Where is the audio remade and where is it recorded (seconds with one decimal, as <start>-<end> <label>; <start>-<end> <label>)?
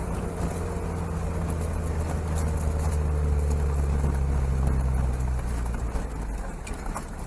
0.0-7.3 recorded